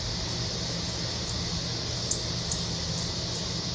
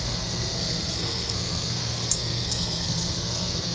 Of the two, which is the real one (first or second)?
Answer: first